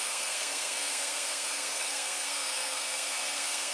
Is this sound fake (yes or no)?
yes